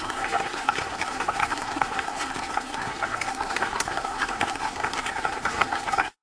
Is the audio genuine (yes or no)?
no